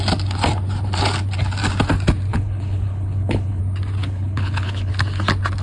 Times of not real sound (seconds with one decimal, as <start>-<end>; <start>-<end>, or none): 2.3-3.6; 4.0-4.9